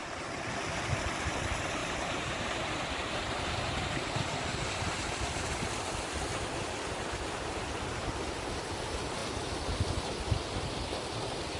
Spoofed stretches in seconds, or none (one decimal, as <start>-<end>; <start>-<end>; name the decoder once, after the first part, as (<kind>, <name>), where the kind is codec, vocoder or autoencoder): 1.8-5.5 (vocoder, BigVGAN v2)